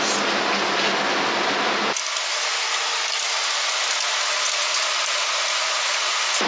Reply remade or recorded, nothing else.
recorded